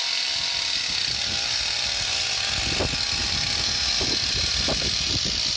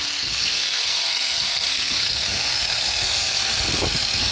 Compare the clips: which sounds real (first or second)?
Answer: first